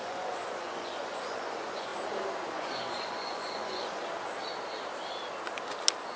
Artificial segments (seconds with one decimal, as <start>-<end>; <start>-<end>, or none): 0.0-1.9; 2.5-4.0